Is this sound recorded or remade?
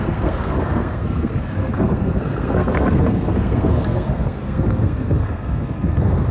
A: remade